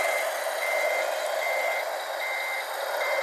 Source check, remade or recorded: recorded